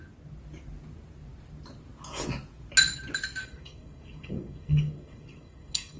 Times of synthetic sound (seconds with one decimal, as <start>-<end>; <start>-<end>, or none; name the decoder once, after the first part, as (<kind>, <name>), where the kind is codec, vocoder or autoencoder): 3.4-6.0 (codec, SNAC)